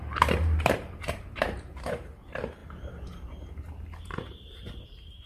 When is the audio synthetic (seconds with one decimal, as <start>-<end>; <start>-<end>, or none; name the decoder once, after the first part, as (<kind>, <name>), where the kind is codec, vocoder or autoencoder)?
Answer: 0.0-5.3 (vocoder, BigVGAN v2)

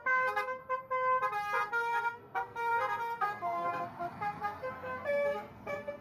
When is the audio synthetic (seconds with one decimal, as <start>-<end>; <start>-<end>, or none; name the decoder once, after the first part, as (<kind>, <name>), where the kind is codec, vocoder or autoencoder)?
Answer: 0.0-0.6 (codec, SNAC); 1.7-6.0

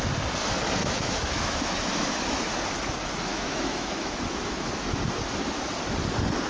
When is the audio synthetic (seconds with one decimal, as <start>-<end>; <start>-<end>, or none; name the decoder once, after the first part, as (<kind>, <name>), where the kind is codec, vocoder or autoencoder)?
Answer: 0.8-2.5 (autoencoder, DAC-VAE); 3.3-5.0

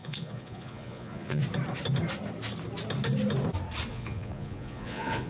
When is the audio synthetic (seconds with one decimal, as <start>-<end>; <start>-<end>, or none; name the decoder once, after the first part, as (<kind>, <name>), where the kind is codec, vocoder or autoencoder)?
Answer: 0.0-1.4 (vocoder, Vocos); 3.9-5.3

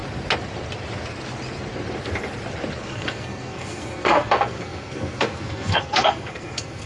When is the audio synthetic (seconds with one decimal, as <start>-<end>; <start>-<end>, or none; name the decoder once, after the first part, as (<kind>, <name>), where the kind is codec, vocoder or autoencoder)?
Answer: 2.8-6.9 (codec, SNAC)

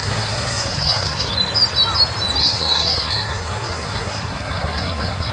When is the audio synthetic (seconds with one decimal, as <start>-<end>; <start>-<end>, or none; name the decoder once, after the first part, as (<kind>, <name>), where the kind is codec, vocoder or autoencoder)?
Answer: 0.0-1.3 (codec, SNAC); 2.4-5.3